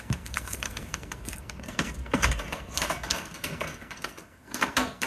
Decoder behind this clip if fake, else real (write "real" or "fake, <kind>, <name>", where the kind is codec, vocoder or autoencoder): fake, codec, SNAC